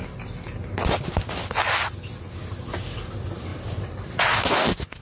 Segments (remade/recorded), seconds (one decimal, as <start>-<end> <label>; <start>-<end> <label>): 0.0-3.5 recorded; 3.5-4.5 remade; 4.5-5.0 recorded